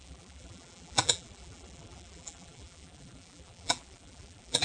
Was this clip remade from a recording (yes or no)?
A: yes